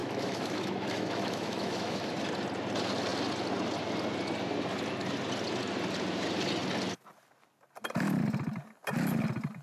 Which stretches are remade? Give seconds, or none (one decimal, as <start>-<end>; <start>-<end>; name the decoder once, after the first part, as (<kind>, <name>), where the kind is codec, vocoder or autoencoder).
0.0-2.1 (autoencoder, DAC-VAE)